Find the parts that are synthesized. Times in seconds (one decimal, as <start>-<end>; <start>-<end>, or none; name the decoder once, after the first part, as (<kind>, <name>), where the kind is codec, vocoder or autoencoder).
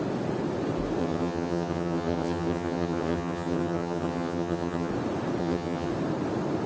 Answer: 1.0-4.9 (vocoder, HiFi-GAN); 5.4-5.9